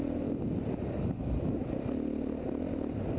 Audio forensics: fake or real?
real